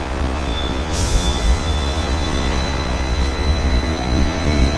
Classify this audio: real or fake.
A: fake